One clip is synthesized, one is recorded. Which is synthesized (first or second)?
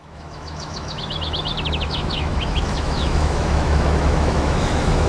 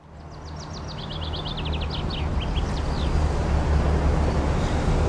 first